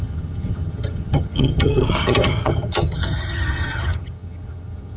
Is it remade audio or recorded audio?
remade